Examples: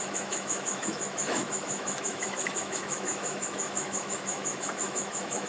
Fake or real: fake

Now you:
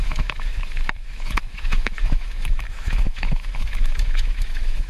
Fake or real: fake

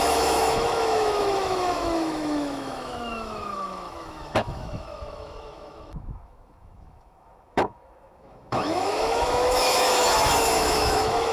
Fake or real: fake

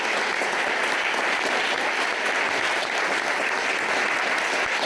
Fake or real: real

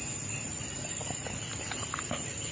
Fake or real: real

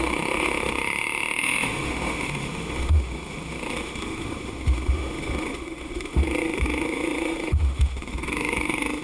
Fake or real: fake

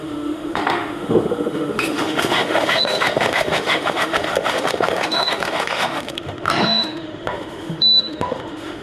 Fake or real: fake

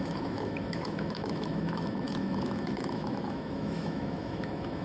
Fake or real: fake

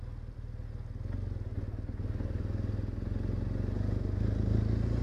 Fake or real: real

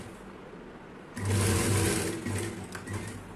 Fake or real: real